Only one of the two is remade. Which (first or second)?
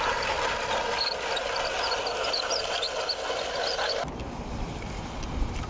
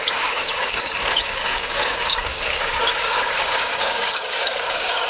second